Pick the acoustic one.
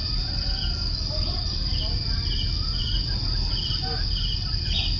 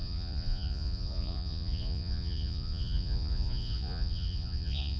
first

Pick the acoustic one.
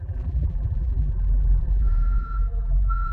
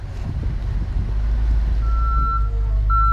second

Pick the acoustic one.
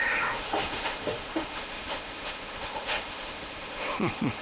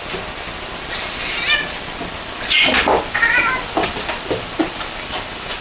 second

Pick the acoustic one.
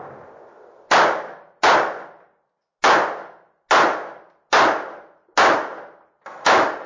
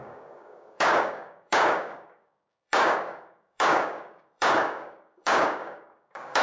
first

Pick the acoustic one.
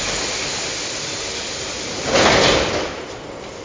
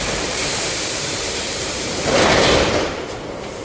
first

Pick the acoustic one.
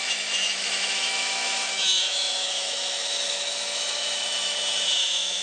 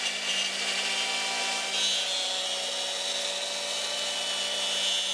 second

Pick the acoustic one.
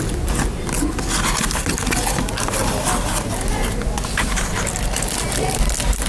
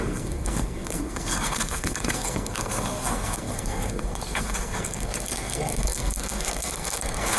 first